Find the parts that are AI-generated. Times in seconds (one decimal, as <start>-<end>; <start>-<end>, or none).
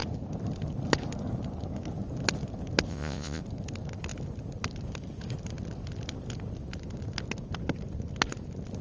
2.9-3.4